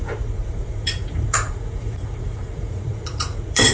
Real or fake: fake